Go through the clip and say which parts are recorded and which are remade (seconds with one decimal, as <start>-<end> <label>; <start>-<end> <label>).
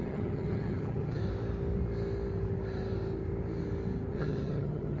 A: 0.0-1.2 remade; 1.2-4.1 recorded; 4.1-5.0 remade